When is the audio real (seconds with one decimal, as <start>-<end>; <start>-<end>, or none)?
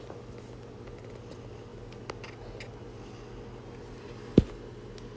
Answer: 0.0-5.2